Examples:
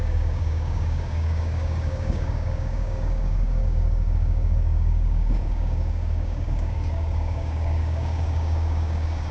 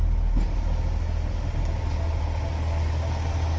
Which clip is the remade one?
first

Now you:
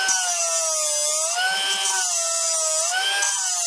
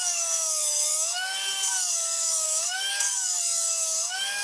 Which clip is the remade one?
second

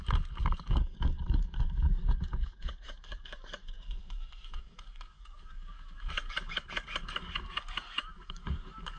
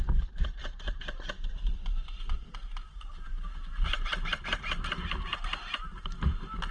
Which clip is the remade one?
first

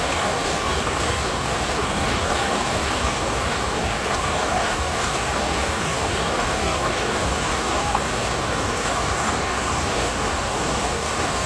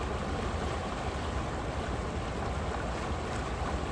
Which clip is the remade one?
first